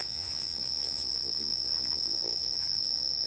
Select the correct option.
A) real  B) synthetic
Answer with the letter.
B